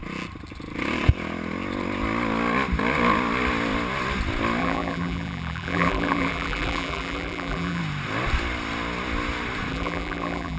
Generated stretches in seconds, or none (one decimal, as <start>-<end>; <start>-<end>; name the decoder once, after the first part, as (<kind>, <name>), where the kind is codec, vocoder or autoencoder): 4.6-7.8 (vocoder, BigVGAN v2); 9.7-10.6